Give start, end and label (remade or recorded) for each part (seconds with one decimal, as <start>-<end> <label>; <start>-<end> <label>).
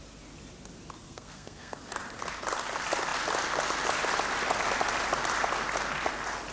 0.0-1.0 recorded; 1.0-1.8 remade; 1.8-6.5 recorded